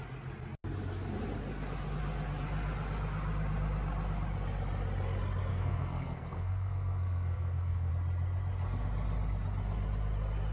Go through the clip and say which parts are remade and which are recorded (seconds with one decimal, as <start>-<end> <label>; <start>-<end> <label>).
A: 0.0-5.5 recorded; 5.5-7.9 remade; 7.9-10.5 recorded